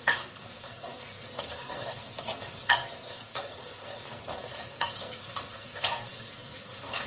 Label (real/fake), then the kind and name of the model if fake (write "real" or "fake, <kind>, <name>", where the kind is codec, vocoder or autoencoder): fake, codec, SNAC